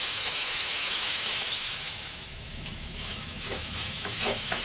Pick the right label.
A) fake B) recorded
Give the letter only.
A